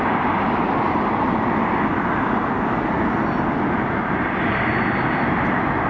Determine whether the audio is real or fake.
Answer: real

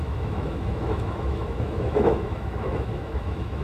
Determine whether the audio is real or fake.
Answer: fake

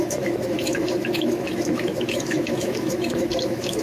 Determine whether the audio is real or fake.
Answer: fake